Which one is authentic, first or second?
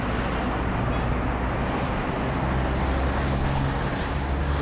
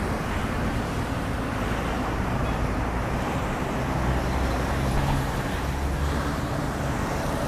first